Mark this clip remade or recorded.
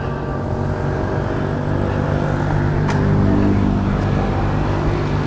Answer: recorded